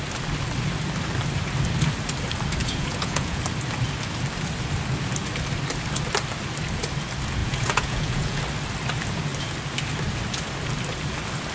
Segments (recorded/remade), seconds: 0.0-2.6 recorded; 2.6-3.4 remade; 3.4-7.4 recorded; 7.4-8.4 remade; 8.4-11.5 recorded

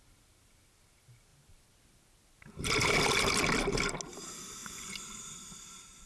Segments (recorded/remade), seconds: 0.0-4.6 recorded; 4.6-5.2 remade; 5.2-6.1 recorded

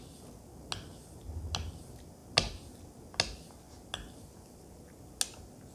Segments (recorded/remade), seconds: 0.0-5.7 recorded

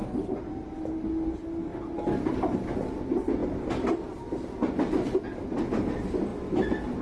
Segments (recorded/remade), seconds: 0.0-0.5 remade; 0.5-7.0 recorded

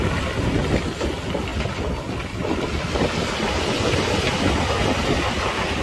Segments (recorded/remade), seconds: 0.0-5.8 recorded

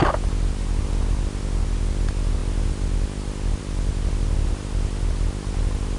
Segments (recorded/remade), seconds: 0.0-6.0 recorded

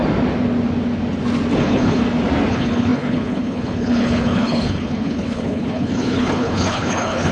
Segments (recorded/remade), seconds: 0.0-1.6 recorded; 1.6-2.0 remade; 2.0-2.5 recorded; 2.5-7.3 remade